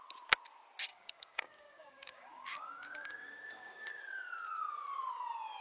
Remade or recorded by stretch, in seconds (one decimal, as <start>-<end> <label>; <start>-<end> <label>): 0.0-0.9 recorded; 0.9-4.0 remade; 4.0-5.6 recorded